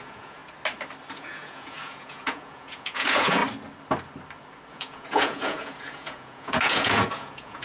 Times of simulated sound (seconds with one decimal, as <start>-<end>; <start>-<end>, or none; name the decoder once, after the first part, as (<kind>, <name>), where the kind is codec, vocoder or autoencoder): 0.0-0.4 (vocoder, Vocos); 1.1-3.4; 4.7-7.6